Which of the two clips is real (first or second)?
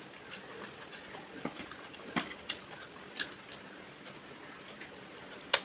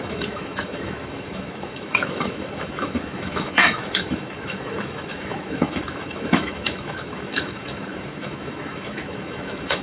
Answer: first